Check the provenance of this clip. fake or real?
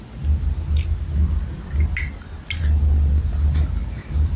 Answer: real